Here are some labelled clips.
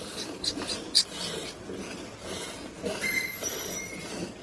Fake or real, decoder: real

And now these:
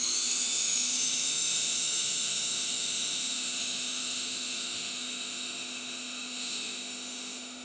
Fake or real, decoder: fake, autoencoder, DAC-VAE